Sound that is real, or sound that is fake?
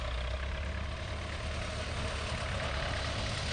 real